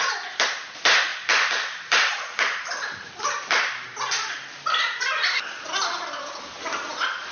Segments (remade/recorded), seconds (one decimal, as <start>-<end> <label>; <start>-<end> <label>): 0.0-7.3 recorded